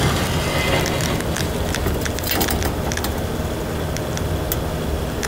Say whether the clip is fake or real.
real